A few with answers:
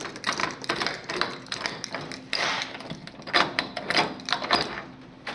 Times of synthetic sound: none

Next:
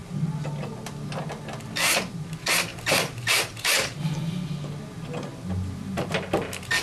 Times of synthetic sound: 2.7-4.2 (vocoder, BigVGAN v2); 5.3-6.1

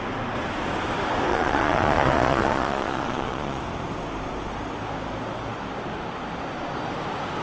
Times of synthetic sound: 1.3-3.6 (vocoder, Vocos)